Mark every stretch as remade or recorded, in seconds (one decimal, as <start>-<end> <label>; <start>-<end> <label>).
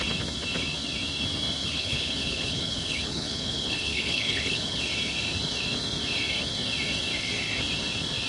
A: 0.0-1.6 recorded; 1.6-4.8 remade; 4.8-8.3 recorded